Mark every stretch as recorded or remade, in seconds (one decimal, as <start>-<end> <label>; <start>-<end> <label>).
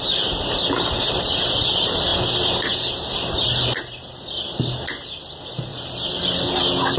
0.0-5.7 recorded; 5.7-6.6 remade; 6.6-7.0 recorded